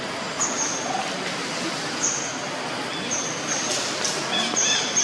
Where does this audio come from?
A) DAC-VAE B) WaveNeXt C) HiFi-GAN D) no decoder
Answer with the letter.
D